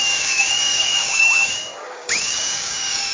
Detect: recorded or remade remade